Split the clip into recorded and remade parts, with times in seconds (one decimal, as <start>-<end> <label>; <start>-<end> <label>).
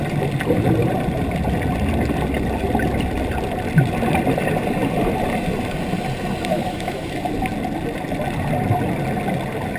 0.0-6.5 recorded; 6.5-7.3 remade; 7.3-9.8 recorded